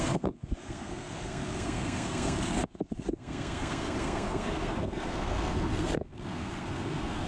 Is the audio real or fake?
fake